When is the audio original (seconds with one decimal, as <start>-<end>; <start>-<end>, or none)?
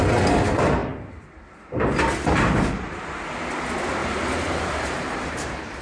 0.0-4.0